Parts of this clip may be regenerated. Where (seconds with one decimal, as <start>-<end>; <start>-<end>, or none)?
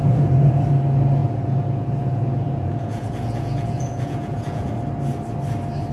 0.0-0.5; 1.2-4.7